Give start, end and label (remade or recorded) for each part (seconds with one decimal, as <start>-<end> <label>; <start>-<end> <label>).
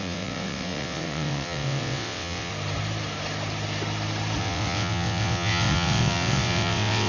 0.0-2.5 remade; 2.5-4.4 recorded; 4.4-7.1 remade